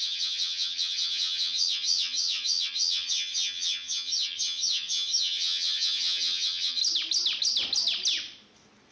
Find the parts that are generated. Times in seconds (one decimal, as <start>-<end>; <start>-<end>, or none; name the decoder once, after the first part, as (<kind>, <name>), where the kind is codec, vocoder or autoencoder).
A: 0.0-6.8 (vocoder, HiFi-GAN)